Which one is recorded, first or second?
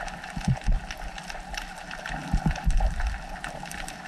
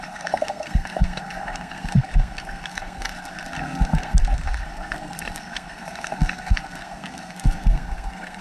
first